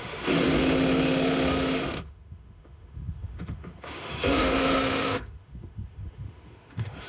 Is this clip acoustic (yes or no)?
no